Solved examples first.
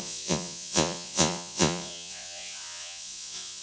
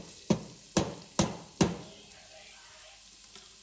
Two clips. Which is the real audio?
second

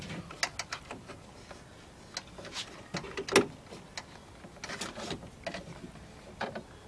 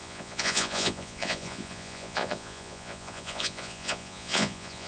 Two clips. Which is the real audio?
first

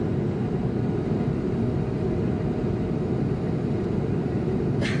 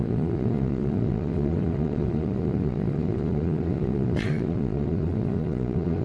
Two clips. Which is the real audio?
first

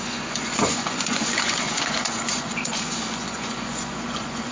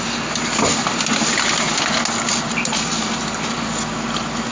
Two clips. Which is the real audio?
second